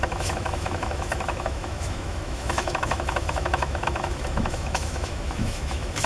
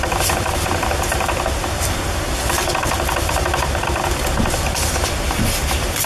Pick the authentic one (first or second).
second